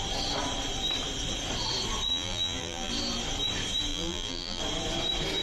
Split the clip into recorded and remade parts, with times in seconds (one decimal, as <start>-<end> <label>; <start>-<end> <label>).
0.0-2.1 recorded; 2.1-2.9 remade; 2.9-3.9 recorded; 3.9-4.6 remade; 4.6-5.4 recorded